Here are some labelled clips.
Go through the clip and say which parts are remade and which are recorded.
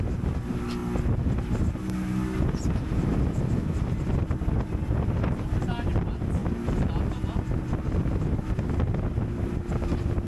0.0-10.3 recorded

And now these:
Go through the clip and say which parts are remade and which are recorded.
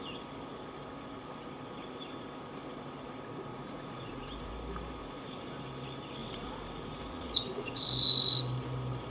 0.0-3.5 recorded; 3.5-4.5 remade; 4.5-5.0 recorded; 5.0-5.5 remade; 5.5-6.2 recorded; 6.2-7.8 remade; 7.8-9.1 recorded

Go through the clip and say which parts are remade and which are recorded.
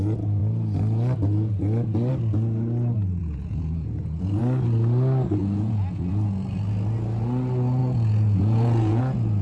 0.0-3.2 recorded; 3.2-4.4 remade; 4.4-5.4 recorded; 5.4-6.1 remade; 6.1-7.8 recorded; 7.8-9.0 remade; 9.0-9.4 recorded